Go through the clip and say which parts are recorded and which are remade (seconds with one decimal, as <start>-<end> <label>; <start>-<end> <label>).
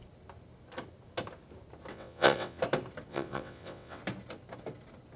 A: 0.0-1.9 recorded; 1.9-2.6 remade; 2.6-3.1 recorded; 3.1-4.0 remade; 4.0-5.2 recorded